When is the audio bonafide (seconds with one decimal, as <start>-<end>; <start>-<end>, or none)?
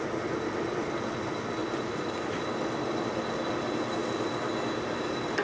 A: 0.0-1.6; 2.4-5.4